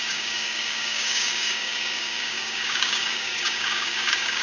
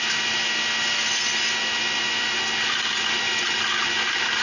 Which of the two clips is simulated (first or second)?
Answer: first